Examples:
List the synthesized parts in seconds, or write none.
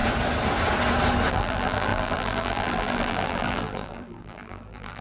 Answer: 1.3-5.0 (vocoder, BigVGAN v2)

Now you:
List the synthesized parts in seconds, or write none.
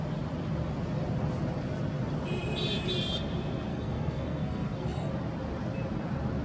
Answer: 3.7-5.1 (codec, SNAC)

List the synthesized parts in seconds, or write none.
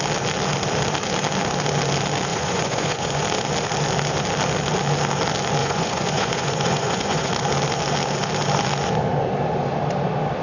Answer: 2.3-3.2 (vocoder, Vocos); 5.6-7.3